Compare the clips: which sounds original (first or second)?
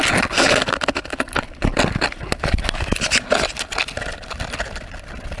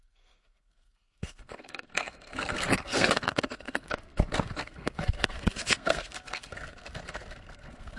first